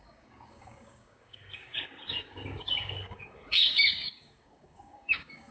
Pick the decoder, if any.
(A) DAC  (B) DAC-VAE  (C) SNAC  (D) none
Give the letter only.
A